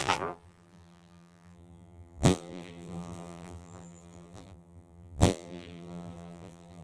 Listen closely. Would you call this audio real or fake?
fake